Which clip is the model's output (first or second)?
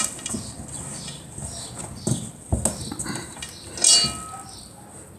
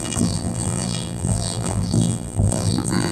second